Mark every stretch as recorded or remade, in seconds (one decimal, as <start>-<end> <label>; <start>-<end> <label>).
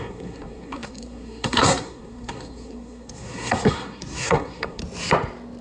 0.0-4.8 remade; 4.8-5.6 recorded